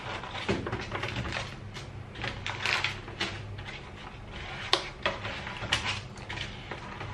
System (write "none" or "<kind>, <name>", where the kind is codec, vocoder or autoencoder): none